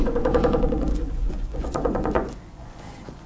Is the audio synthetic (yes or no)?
yes